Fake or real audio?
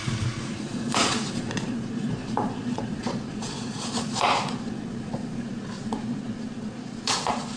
fake